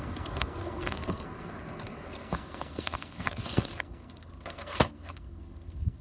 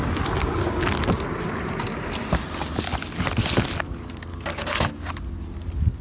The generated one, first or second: first